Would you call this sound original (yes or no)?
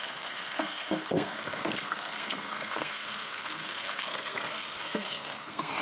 no